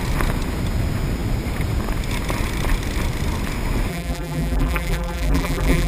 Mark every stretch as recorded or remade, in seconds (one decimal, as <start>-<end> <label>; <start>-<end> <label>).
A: 0.0-3.9 recorded; 3.9-5.9 remade